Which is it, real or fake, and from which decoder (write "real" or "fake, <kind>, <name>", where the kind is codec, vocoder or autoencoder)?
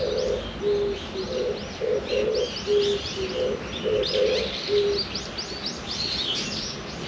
real